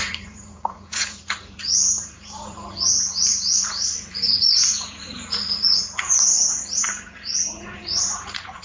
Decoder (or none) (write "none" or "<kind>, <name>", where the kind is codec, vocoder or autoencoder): vocoder, Vocos